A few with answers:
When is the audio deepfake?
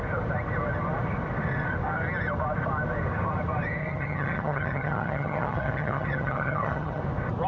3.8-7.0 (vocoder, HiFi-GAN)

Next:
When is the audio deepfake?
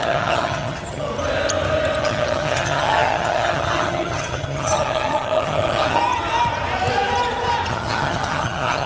0.0-1.1 (vocoder, HiFi-GAN); 2.0-6.0; 7.7-8.9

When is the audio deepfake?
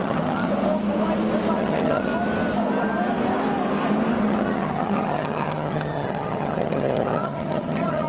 0.0-0.5 (vocoder, HiFi-GAN); 1.5-2.1; 4.2-8.1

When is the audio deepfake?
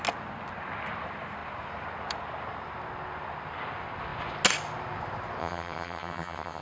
5.4-6.6 (vocoder, HiFi-GAN)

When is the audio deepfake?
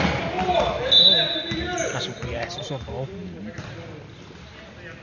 none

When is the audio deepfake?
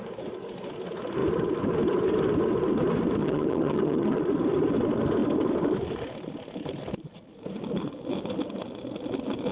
3.2-4.2 (vocoder, HiFi-GAN)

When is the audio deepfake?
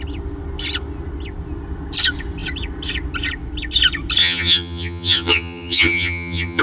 4.2-6.6 (vocoder, HiFi-GAN)